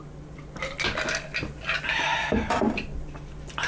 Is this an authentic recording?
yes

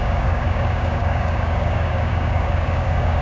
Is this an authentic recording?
no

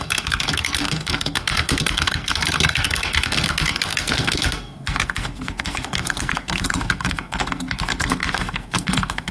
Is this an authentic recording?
no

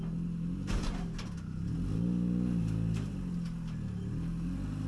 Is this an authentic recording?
yes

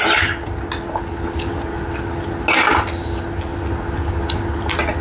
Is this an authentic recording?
yes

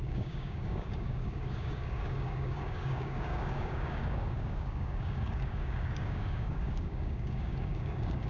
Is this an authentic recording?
no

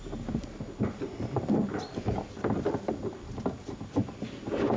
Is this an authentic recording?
yes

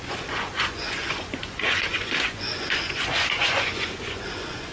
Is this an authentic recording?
no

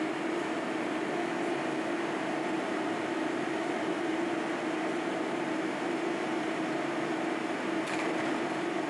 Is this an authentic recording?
yes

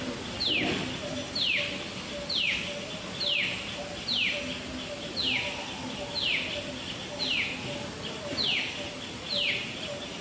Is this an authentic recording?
yes